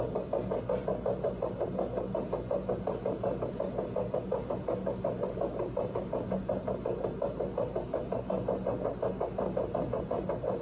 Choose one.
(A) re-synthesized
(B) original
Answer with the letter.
B